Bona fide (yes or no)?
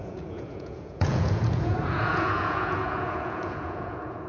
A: no